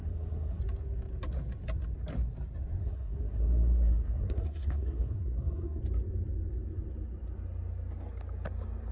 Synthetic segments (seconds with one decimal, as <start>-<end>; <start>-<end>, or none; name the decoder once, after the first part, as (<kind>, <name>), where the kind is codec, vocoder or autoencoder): 0.0-0.6 (codec, SNAC); 2.8-5.8